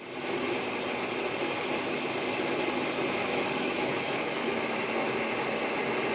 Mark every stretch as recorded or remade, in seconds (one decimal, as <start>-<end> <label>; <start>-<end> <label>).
0.0-3.2 recorded; 3.2-4.6 remade; 4.6-6.1 recorded